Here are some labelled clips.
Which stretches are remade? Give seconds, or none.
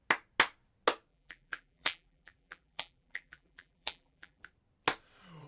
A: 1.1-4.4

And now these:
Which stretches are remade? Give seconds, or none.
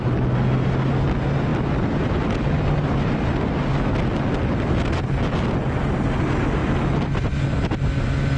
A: none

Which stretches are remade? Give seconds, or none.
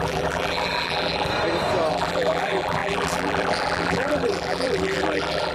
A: 0.0-1.3; 1.9-5.5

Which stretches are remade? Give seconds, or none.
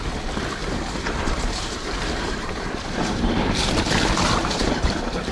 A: 0.6-3.3; 4.4-5.3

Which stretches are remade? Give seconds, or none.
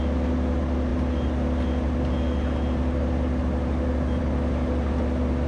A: none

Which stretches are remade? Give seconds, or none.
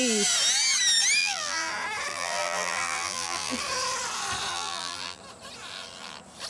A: 1.2-1.7; 2.1-3.6; 4.5-5.2